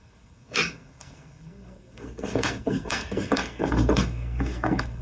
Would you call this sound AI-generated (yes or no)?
yes